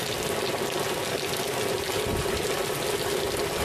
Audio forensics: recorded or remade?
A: recorded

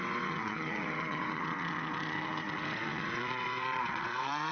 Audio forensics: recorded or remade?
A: remade